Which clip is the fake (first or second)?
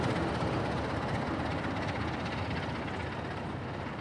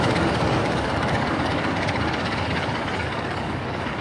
second